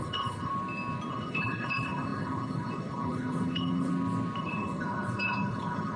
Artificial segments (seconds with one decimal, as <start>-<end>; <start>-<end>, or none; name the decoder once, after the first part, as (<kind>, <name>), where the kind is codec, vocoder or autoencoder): 0.0-0.5 (codec, HILCodec); 1.1-3.9; 4.4-6.0